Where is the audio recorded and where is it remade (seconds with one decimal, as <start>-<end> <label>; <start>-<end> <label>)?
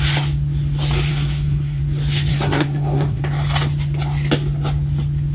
0.0-1.1 recorded; 1.1-1.8 remade; 1.8-2.3 recorded; 2.3-3.2 remade; 3.2-5.3 recorded